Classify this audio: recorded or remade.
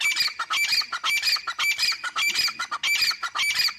recorded